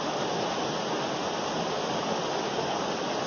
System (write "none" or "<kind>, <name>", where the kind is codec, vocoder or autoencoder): none